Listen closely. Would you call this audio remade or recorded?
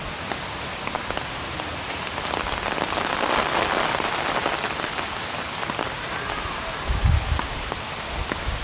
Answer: recorded